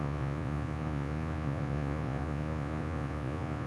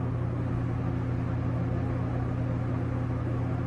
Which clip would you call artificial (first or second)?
first